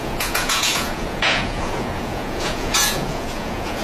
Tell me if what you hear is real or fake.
fake